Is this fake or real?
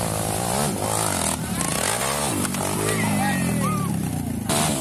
real